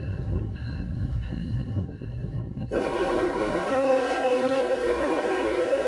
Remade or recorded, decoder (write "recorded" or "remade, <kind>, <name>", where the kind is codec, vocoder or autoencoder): remade, codec, SNAC